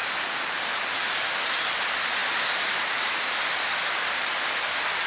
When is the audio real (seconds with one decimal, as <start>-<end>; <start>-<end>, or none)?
0.0-5.1

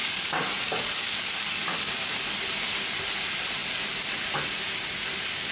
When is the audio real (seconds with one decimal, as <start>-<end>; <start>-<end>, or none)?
2.3-5.5

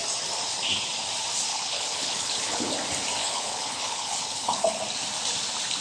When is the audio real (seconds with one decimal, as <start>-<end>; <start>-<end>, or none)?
0.0-1.5; 2.7-3.2; 4.8-5.8

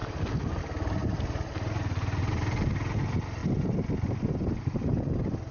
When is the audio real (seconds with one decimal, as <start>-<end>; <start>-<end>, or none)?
0.0-5.5

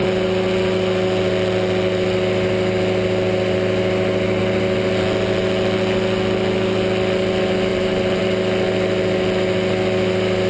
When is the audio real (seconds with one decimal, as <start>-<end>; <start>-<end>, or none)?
0.0-7.7; 8.2-10.5

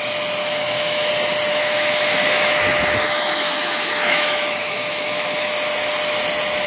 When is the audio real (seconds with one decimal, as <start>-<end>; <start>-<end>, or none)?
0.0-0.4; 1.1-1.5; 5.5-6.7

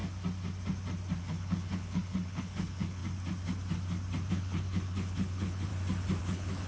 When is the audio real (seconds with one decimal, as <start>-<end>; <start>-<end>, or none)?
0.0-1.2; 3.0-4.3; 5.7-6.2